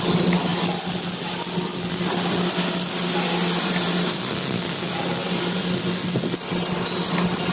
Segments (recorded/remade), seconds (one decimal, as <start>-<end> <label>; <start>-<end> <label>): 0.0-7.5 recorded